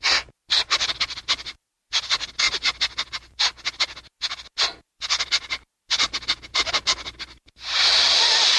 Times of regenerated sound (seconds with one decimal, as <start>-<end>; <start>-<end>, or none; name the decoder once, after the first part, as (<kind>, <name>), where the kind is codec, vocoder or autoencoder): none